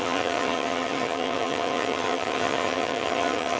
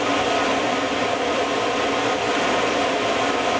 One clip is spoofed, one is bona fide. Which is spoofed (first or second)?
first